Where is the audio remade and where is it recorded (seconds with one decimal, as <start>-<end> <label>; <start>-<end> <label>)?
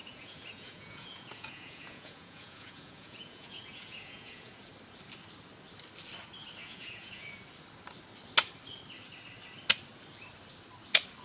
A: 0.0-4.7 remade; 4.7-6.6 recorded; 6.6-7.4 remade; 7.4-11.2 recorded